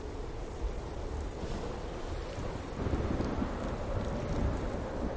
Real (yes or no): yes